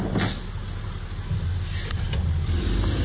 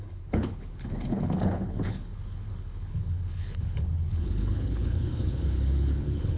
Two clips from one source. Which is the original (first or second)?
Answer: first